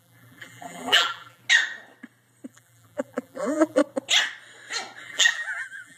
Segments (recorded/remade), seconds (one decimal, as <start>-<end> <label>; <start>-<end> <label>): 0.0-1.4 remade; 1.4-2.5 recorded; 2.5-3.8 remade; 3.8-5.0 recorded; 5.0-6.0 remade